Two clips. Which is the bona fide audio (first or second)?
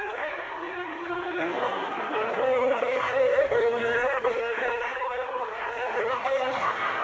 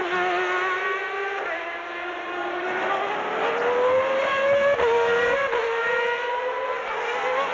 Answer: second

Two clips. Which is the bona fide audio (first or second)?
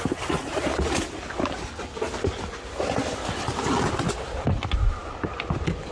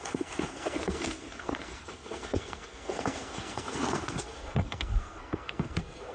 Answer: first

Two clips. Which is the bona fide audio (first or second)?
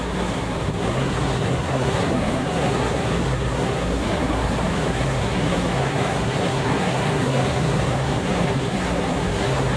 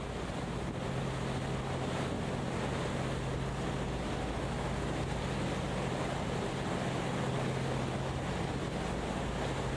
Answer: second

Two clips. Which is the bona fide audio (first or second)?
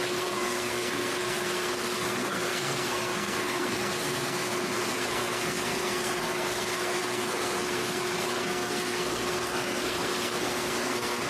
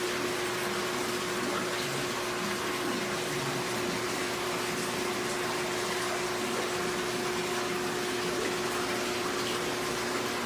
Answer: second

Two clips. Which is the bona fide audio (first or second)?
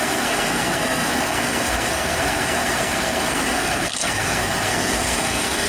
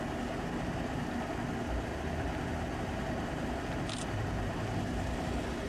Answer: second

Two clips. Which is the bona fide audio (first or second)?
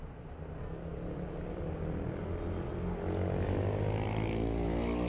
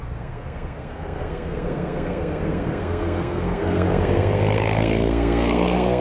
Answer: first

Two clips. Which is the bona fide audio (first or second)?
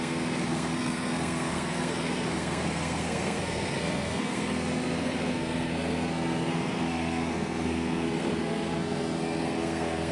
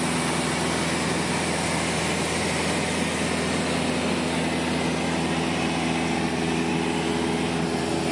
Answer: second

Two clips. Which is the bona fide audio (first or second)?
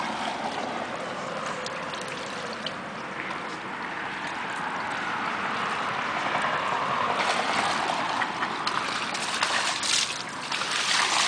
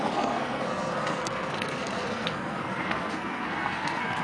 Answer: first